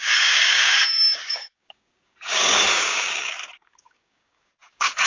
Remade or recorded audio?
remade